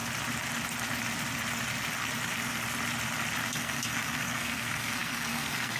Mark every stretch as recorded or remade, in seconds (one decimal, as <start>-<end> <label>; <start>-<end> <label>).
0.0-3.5 recorded; 3.5-5.8 remade